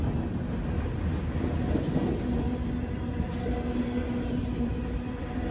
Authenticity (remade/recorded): recorded